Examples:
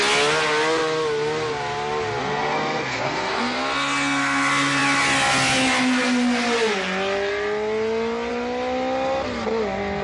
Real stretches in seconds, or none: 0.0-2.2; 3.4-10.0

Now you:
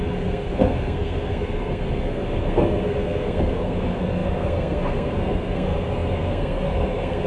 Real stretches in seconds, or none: none

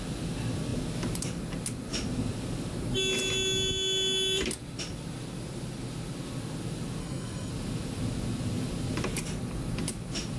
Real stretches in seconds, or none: 0.0-7.0; 7.5-10.4

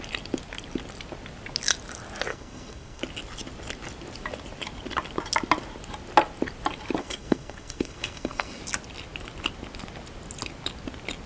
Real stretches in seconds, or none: 0.0-2.3; 3.0-7.0; 8.6-11.3